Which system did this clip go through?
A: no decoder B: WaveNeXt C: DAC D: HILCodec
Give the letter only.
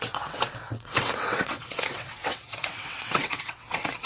B